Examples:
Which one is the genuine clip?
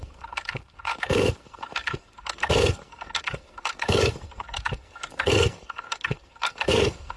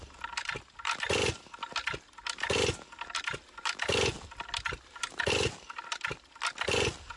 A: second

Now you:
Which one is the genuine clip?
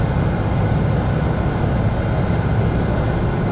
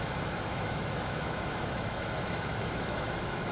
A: first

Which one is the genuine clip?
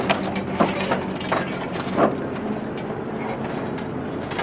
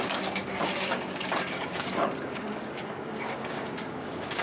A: first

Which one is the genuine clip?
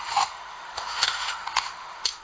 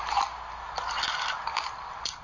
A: second